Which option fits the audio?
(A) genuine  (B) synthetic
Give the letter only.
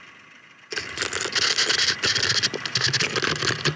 A